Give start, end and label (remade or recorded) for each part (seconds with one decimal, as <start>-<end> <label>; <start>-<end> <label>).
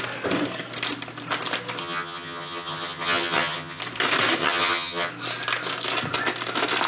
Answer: 0.0-1.8 recorded; 1.8-3.8 remade; 3.8-4.4 recorded; 4.4-5.1 remade; 5.1-6.9 recorded